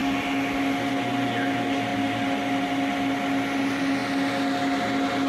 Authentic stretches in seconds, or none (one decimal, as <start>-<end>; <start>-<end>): 0.0-5.3